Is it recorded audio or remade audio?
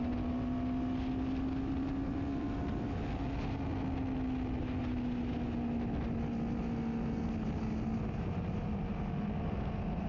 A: recorded